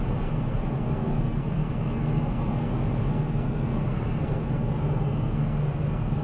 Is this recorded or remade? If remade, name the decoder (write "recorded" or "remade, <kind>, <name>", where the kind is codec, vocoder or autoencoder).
remade, codec, SNAC